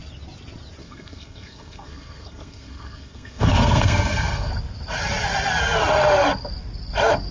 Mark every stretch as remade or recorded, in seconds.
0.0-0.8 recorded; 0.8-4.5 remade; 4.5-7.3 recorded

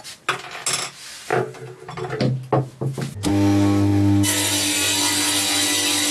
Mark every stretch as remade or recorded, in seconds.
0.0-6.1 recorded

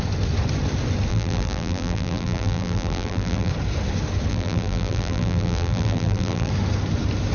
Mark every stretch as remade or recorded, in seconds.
0.0-1.1 recorded; 1.1-3.5 remade; 3.5-4.3 recorded; 4.3-6.5 remade; 6.5-7.3 recorded

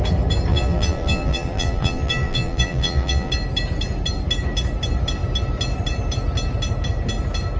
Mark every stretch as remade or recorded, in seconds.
0.0-0.5 recorded; 0.5-3.3 remade; 3.3-7.6 recorded

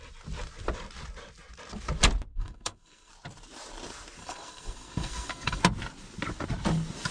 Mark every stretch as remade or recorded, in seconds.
0.0-2.3 recorded; 2.3-3.1 remade; 3.1-4.2 recorded; 4.2-5.6 remade; 5.6-7.1 recorded